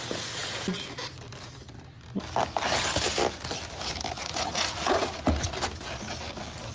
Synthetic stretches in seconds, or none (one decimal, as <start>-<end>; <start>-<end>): 4.2-5.5